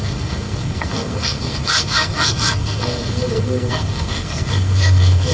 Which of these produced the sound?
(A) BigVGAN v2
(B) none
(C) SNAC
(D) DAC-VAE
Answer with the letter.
C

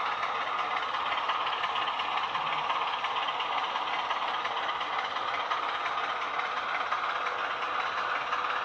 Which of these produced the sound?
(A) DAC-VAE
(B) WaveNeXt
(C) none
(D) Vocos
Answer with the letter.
C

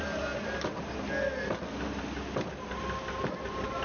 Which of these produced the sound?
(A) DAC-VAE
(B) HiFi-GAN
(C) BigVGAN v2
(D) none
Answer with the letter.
D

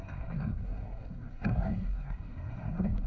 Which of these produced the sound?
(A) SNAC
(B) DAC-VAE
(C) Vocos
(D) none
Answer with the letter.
A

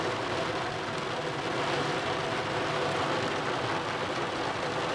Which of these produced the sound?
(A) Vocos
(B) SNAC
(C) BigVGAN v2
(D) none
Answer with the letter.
D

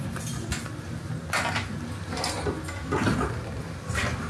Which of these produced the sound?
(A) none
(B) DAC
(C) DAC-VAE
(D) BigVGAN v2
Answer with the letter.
A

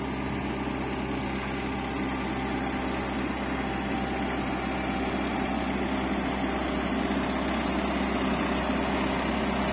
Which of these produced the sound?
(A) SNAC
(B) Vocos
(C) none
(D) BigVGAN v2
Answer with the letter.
C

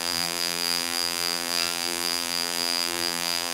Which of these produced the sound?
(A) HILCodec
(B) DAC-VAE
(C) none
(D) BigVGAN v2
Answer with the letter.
D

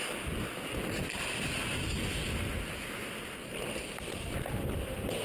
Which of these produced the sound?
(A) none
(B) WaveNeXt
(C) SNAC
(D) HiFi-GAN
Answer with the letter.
A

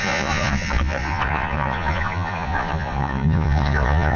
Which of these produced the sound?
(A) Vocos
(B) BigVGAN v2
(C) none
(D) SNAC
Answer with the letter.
A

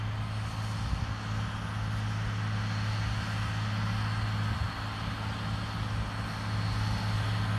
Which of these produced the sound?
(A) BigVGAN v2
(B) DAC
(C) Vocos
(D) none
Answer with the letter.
D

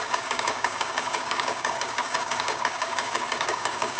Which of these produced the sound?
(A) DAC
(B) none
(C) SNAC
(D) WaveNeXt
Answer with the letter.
A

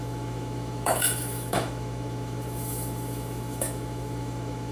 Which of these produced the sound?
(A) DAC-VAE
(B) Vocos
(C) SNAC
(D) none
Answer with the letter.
A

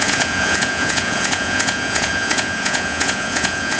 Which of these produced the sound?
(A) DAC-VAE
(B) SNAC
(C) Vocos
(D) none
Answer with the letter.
C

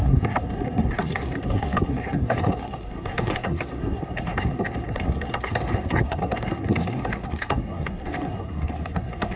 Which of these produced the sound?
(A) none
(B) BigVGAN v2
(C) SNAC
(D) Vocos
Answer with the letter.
C